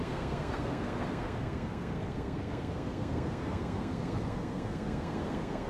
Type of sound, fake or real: fake